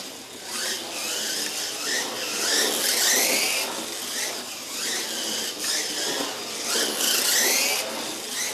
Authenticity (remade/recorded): recorded